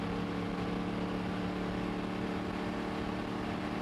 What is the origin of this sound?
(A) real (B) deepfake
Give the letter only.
A